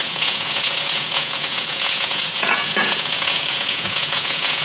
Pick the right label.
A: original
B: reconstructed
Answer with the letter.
B